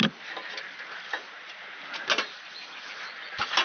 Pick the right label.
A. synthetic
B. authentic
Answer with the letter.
B